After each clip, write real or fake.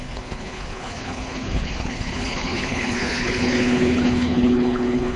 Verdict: fake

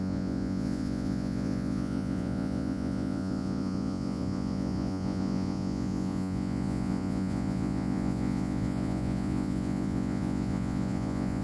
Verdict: fake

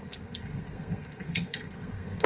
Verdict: fake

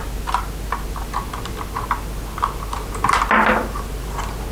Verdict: real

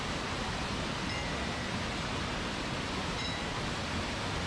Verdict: real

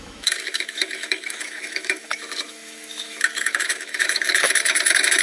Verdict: fake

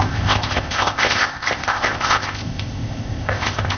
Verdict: fake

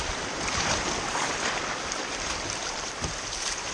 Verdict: fake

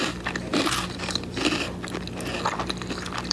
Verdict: real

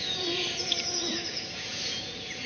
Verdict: fake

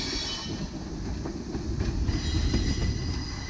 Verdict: real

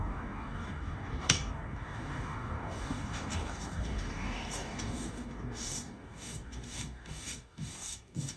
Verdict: fake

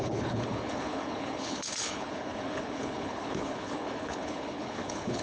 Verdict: fake